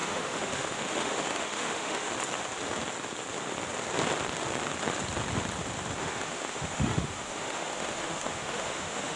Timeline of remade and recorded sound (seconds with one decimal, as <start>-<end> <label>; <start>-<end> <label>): 0.0-2.1 remade; 2.1-6.0 recorded; 6.0-9.2 remade